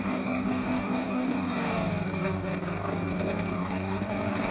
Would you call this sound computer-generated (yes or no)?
yes